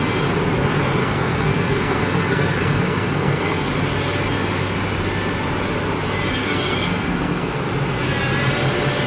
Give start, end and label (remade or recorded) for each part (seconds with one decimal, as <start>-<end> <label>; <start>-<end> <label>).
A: 0.0-1.0 recorded; 1.0-3.7 remade; 3.7-6.4 recorded; 6.4-7.6 remade; 7.6-9.1 recorded